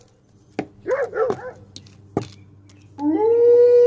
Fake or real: real